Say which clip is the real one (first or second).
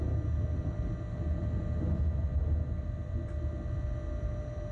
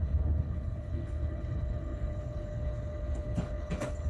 first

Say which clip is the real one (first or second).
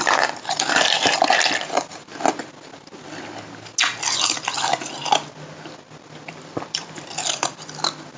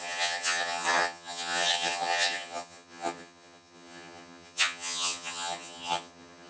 first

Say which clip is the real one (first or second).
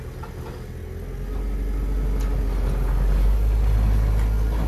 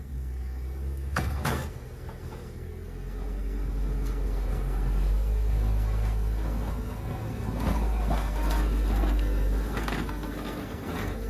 first